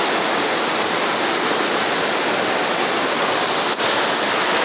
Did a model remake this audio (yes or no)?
no